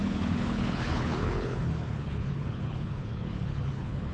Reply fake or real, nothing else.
fake